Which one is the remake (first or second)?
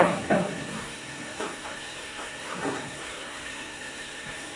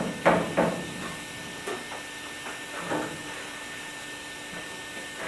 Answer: first